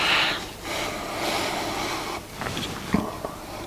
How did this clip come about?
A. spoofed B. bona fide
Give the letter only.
B